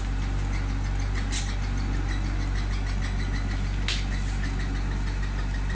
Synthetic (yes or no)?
no